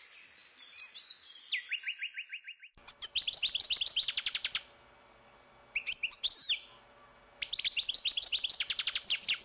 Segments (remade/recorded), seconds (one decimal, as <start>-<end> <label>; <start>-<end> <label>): 0.0-9.4 recorded